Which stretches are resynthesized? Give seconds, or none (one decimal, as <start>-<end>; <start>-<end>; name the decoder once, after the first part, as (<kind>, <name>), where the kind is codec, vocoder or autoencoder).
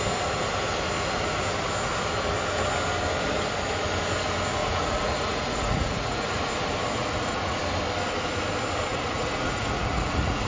4.6-6.4 (vocoder, Vocos); 7.0-7.6; 8.9-10.5